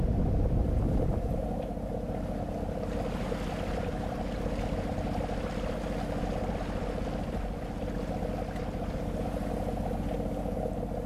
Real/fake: real